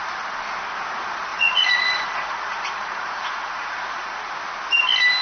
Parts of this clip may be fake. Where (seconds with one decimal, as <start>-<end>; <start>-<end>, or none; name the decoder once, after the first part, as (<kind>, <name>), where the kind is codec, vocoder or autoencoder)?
1.3-4.3 (vocoder, Vocos)